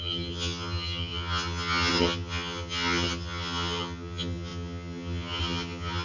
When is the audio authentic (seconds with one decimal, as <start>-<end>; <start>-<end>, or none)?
none